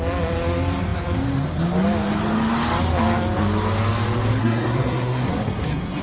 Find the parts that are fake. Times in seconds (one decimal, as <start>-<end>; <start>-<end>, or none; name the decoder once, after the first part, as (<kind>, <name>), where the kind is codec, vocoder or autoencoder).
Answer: 4.4-6.0 (codec, SNAC)